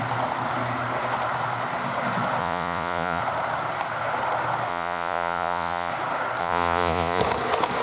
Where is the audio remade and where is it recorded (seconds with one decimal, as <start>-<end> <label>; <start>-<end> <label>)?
0.0-2.4 recorded; 2.4-3.2 remade; 3.2-4.7 recorded; 4.7-5.9 remade; 5.9-6.4 recorded; 6.4-7.2 remade; 7.2-7.8 recorded